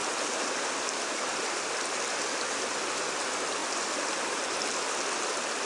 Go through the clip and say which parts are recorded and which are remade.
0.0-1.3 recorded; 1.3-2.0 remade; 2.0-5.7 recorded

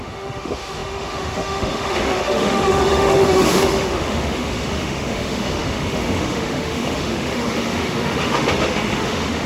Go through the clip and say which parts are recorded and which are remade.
0.0-9.5 remade

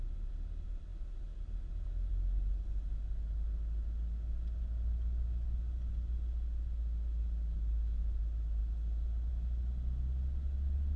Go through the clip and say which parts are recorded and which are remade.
0.0-0.9 recorded; 0.9-2.1 remade; 2.1-11.0 recorded

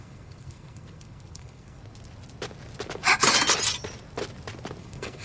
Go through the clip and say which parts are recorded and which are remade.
0.0-1.8 remade; 1.8-4.8 recorded; 4.8-5.2 remade

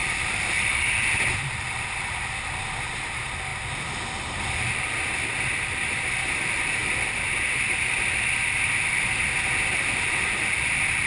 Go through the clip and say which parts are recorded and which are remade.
0.0-11.1 recorded

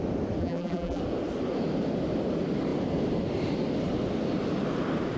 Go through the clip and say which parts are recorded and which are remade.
0.0-0.4 recorded; 0.4-1.0 remade; 1.0-5.2 recorded

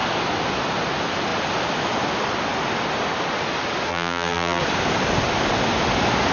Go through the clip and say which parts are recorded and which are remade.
0.0-3.9 recorded; 3.9-4.6 remade; 4.6-6.3 recorded